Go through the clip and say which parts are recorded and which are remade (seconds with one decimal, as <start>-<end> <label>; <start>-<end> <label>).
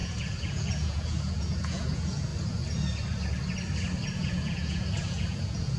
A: 0.0-2.3 remade; 2.3-4.2 recorded; 4.2-5.8 remade